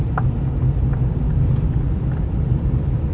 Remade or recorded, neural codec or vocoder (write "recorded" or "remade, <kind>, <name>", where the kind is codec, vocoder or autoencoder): recorded